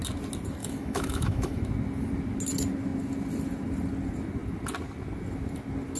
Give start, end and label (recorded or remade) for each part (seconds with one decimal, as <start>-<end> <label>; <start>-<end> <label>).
0.0-0.6 recorded; 0.6-1.6 remade; 1.6-6.0 recorded